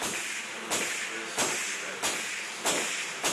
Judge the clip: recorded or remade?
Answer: recorded